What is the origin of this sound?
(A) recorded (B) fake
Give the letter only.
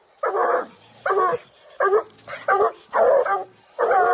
A